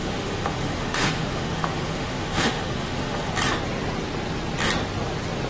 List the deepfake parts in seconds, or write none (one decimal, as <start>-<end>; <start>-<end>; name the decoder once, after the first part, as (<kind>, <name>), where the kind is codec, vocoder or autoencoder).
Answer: 0.0-3.3 (autoencoder, DAC-VAE)

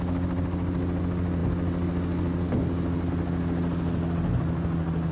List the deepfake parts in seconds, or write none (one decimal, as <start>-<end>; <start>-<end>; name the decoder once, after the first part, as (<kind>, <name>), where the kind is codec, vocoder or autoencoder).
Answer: none

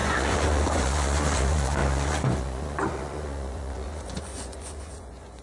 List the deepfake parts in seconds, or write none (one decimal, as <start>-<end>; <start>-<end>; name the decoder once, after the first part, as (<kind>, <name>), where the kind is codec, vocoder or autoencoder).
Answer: 0.0-5.4 (vocoder, Vocos)

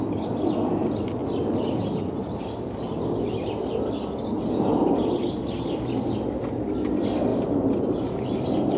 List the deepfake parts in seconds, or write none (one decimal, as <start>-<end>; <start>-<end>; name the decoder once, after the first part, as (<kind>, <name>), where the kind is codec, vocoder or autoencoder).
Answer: 7.3-8.1 (vocoder, BigVGAN v2)

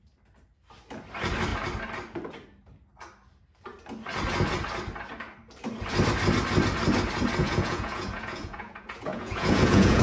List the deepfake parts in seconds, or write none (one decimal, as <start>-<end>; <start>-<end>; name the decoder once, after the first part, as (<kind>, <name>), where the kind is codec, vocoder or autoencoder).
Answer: 7.4-10.0 (vocoder, Vocos)

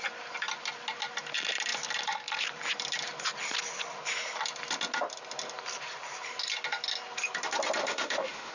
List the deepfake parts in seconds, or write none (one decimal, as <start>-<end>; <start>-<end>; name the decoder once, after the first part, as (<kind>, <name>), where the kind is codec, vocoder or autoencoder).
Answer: 7.8-8.5 (autoencoder, DAC-VAE)

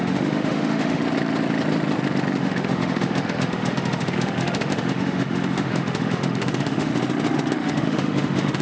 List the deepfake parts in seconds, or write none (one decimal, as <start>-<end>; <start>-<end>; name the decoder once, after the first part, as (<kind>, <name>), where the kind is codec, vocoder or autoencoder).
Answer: 0.0-1.0 (autoencoder, DAC-VAE); 2.4-6.9; 7.5-8.6